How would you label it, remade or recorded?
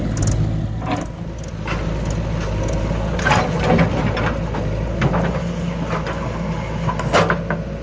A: recorded